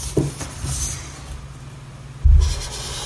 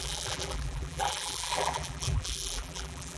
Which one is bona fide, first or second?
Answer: first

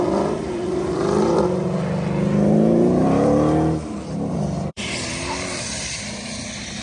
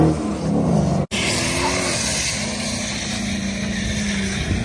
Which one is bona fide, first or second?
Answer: second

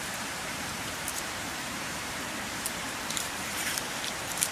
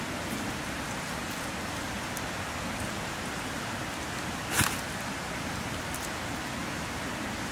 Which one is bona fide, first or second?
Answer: second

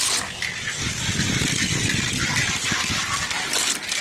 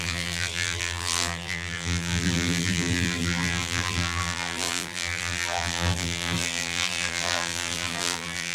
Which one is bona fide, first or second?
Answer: first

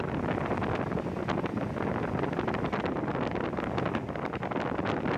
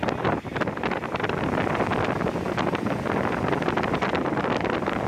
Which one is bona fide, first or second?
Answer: first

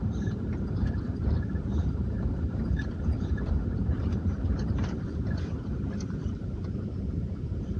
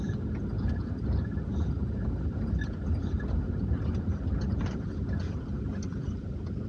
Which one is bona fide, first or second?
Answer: second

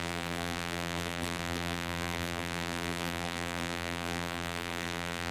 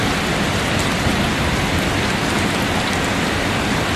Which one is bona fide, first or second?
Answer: second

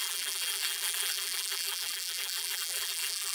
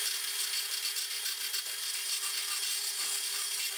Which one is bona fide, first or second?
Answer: second